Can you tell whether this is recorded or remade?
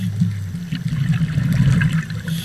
recorded